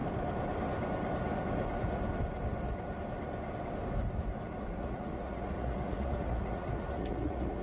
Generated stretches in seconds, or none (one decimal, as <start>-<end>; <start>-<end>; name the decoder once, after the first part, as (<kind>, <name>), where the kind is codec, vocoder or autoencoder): 4.6-7.6 (vocoder, Vocos)